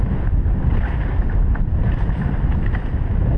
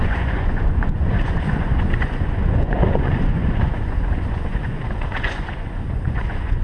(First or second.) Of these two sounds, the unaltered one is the first